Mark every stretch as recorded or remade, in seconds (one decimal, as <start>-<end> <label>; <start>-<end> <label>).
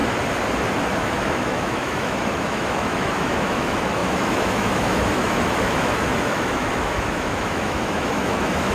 0.0-1.0 recorded; 1.0-8.7 remade